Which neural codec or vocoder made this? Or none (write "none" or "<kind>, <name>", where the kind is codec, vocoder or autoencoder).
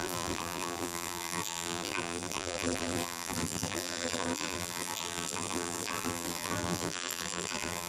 vocoder, BigVGAN v2